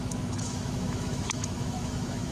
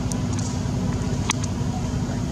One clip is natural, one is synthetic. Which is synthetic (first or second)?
first